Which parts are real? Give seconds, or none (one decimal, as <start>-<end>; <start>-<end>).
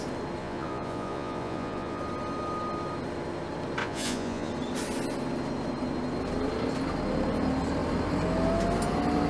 0.0-0.4; 2.0-3.8; 4.5-9.3